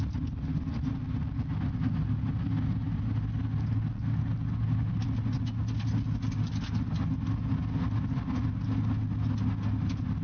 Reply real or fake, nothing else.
real